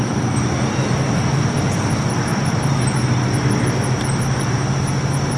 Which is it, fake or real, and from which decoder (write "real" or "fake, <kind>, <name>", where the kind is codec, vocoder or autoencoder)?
real